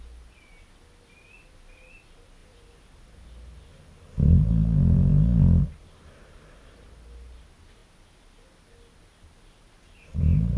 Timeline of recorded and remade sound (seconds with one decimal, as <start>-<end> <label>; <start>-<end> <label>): 0.0-10.6 recorded